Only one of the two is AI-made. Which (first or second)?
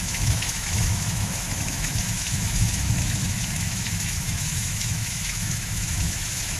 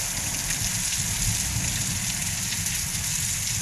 first